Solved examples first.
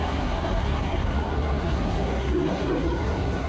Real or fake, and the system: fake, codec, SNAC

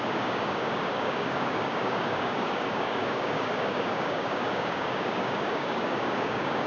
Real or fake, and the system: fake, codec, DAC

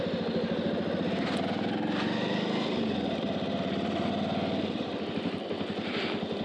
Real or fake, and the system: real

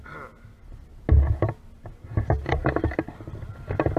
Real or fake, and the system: real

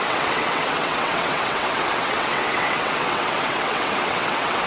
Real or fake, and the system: fake, vocoder, WaveNeXt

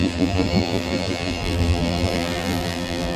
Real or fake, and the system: fake, vocoder, BigVGAN v2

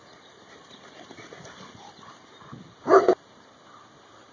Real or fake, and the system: real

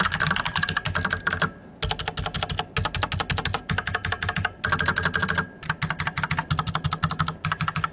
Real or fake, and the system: real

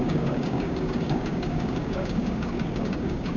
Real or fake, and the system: fake, codec, DAC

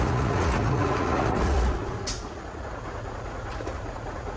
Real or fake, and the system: fake, vocoder, Vocos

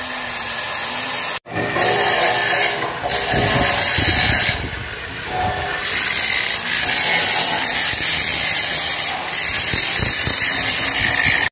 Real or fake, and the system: real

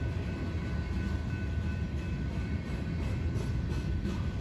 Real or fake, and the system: real